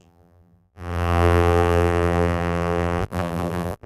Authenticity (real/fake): fake